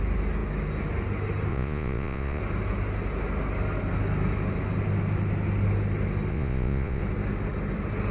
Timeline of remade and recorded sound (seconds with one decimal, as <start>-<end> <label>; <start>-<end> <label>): 0.0-1.5 recorded; 1.5-2.4 remade; 2.4-6.3 recorded; 6.3-7.0 remade; 7.0-8.1 recorded